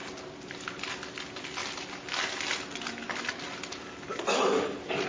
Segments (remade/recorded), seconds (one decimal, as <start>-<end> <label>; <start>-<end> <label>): 0.0-5.1 recorded